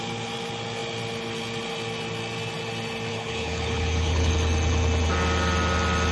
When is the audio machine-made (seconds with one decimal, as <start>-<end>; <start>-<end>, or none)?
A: 3.1-4.3